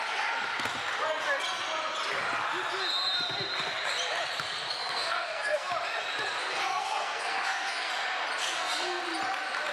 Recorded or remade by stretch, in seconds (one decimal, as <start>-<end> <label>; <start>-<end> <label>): 0.0-4.8 recorded; 4.8-5.7 remade; 5.7-6.4 recorded; 6.4-7.9 remade; 7.9-8.4 recorded; 8.4-9.0 remade; 9.0-9.7 recorded